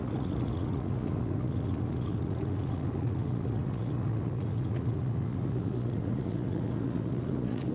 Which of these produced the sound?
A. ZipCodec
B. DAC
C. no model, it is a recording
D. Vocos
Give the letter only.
D